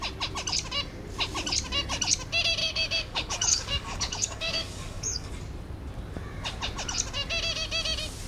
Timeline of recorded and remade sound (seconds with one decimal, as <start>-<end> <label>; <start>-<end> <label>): 0.0-2.6 recorded; 2.6-5.3 remade; 5.3-8.3 recorded

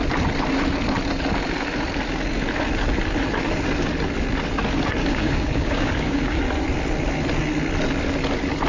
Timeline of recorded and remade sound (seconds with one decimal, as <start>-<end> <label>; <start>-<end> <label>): 0.0-5.0 recorded; 5.0-6.4 remade; 6.4-8.7 recorded

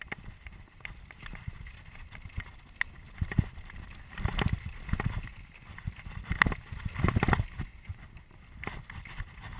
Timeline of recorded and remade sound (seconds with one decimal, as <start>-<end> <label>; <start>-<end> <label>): 0.0-9.6 recorded

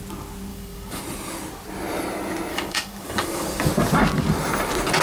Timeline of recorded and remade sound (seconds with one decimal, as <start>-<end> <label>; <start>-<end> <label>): 0.0-0.5 recorded; 0.5-1.0 remade; 1.0-2.5 recorded; 2.5-3.7 remade; 3.7-5.0 recorded

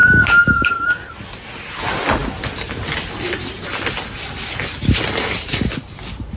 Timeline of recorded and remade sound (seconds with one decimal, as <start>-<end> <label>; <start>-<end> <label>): 0.0-0.7 remade; 0.7-6.4 recorded

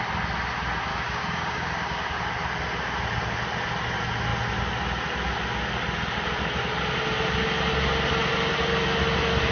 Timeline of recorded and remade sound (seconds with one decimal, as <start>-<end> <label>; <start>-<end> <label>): 0.0-0.9 recorded; 0.9-2.2 remade; 2.2-9.5 recorded